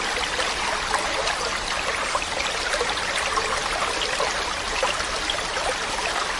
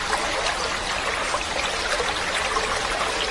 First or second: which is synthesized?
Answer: first